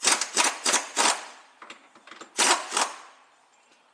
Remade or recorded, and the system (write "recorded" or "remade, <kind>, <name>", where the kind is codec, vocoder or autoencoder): recorded